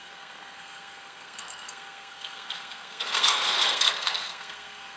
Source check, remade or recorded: remade